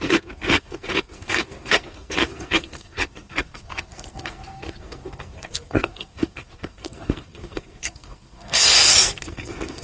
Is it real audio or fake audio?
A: fake